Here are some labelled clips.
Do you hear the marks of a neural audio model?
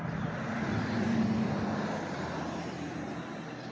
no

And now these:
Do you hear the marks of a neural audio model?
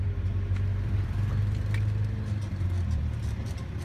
yes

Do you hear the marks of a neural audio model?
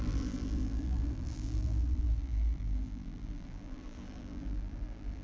yes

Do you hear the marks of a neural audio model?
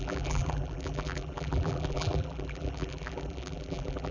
yes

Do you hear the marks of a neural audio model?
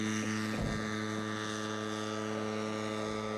no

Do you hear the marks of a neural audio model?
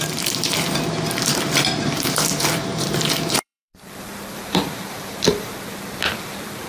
yes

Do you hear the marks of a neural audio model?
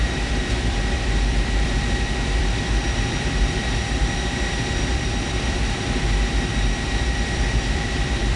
yes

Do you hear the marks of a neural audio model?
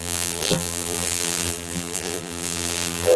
yes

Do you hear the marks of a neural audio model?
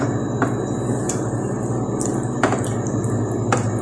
no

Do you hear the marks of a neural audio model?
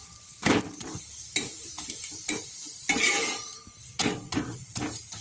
yes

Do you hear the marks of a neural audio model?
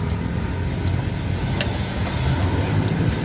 no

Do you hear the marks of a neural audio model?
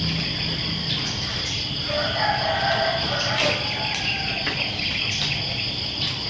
yes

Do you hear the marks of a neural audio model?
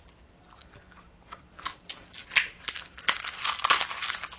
no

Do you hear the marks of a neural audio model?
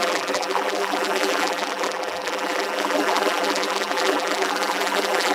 yes